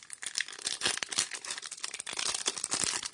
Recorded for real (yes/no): yes